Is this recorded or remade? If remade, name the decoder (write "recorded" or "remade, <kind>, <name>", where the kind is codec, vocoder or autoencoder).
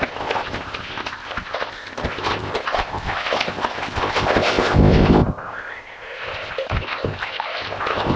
remade, codec, ZipCodec